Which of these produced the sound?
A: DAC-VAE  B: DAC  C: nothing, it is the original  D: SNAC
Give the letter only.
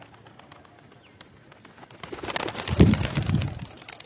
C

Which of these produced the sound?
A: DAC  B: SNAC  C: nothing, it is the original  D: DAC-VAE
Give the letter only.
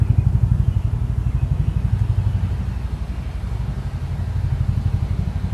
C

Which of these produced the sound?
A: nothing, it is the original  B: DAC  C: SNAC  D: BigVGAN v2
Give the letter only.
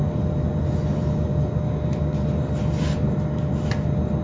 A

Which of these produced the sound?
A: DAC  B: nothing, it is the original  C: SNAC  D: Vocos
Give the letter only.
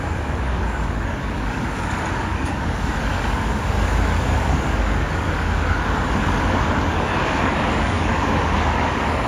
A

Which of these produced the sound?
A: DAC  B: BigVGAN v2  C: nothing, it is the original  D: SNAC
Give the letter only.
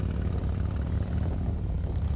C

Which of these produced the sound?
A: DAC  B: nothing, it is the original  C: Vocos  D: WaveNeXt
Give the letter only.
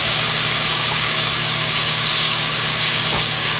A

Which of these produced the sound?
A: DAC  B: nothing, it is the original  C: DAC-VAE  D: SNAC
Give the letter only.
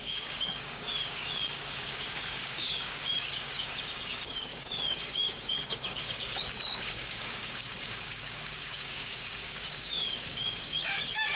A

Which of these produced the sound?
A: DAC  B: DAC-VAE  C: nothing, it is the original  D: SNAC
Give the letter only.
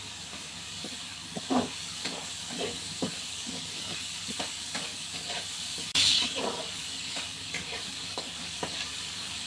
A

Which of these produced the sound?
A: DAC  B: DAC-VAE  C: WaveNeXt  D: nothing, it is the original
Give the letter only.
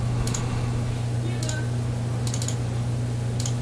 D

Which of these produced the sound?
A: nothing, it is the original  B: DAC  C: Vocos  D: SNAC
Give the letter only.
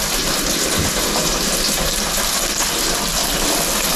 A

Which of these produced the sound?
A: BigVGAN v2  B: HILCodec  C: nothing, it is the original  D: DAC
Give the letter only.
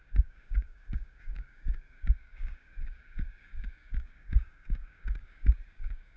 D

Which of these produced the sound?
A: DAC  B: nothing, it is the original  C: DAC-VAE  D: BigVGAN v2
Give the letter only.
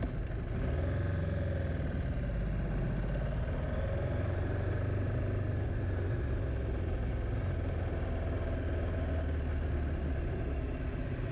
B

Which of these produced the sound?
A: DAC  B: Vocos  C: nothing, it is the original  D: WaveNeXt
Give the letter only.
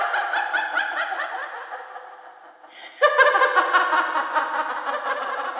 C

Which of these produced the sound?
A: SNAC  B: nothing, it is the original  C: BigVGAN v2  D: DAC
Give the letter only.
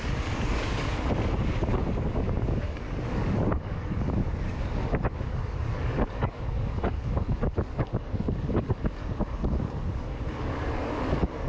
D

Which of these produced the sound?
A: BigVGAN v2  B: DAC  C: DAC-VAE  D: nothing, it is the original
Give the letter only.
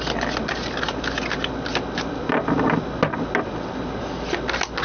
D